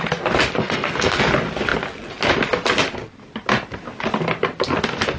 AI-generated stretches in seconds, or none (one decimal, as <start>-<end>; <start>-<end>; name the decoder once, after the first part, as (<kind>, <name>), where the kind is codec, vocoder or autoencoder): 0.6-1.2 (codec, SNAC)